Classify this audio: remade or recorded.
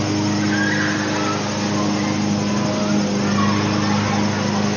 recorded